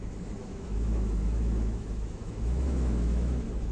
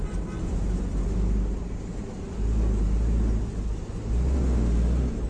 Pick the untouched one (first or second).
second